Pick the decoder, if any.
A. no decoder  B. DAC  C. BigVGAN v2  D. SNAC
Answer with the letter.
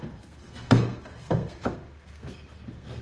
D